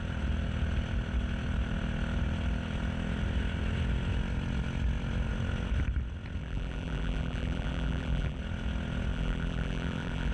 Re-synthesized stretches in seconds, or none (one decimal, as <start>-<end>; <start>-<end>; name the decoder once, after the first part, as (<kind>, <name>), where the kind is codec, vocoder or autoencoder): 6.4-8.4 (vocoder, BigVGAN v2); 9.1-10.3